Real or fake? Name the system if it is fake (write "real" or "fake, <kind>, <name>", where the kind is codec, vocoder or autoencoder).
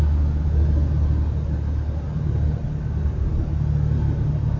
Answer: real